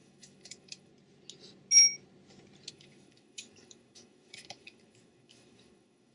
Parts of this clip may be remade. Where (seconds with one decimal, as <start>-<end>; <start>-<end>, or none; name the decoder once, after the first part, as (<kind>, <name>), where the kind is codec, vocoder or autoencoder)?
0.0-0.9 (autoencoder, DAC-VAE); 2.7-6.1